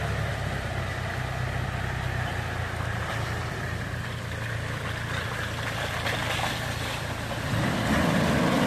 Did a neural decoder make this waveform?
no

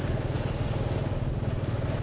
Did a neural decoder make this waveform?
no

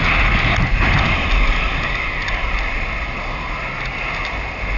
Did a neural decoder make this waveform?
no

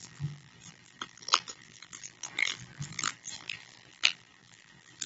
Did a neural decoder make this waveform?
yes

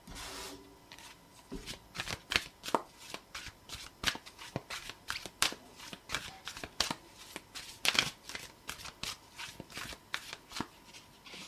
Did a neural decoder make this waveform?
no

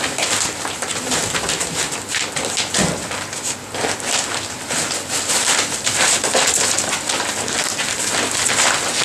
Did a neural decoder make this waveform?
no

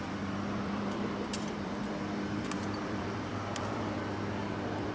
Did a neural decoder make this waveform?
yes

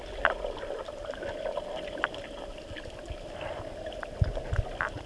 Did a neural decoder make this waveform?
no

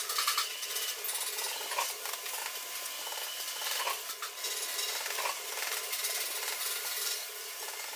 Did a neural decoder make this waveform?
yes